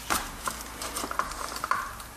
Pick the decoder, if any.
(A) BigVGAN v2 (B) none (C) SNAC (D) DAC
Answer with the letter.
B